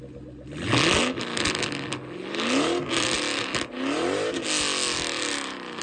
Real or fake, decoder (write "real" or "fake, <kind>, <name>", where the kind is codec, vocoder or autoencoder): real